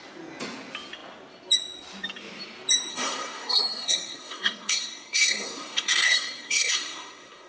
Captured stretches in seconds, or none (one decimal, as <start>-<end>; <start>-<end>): 0.0-2.9